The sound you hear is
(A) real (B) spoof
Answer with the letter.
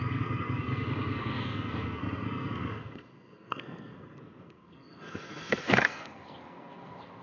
B